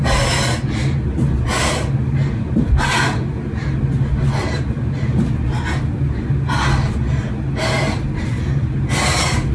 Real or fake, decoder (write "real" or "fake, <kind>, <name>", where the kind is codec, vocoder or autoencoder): real